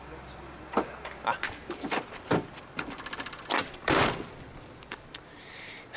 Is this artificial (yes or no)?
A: yes